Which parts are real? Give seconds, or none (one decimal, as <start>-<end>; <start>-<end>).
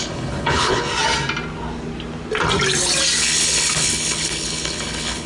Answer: 0.9-3.2